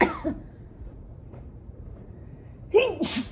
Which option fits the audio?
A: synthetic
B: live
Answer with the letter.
A